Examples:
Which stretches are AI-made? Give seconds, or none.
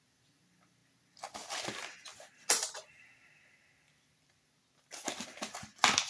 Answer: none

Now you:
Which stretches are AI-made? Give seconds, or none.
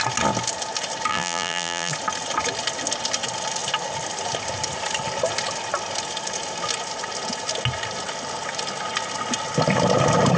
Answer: 1.1-1.9 (vocoder, BigVGAN v2)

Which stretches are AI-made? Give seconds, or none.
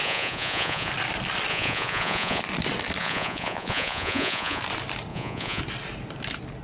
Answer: 0.0-0.9 (vocoder, Vocos); 1.5-2.4; 3.0-4.6; 5.1-5.6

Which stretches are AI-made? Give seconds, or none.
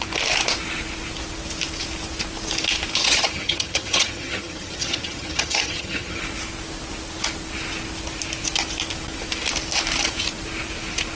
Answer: 3.0-6.2 (vocoder, HiFi-GAN)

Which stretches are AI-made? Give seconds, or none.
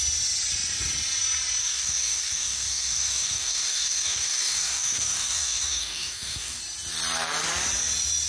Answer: 1.6-6.6 (codec, DAC)